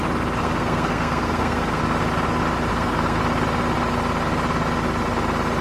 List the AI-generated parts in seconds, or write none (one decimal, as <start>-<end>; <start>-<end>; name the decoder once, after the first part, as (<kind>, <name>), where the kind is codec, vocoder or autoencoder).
0.4-1.8 (codec, SNAC); 2.7-3.2